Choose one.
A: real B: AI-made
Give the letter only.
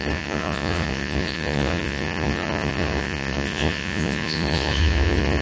B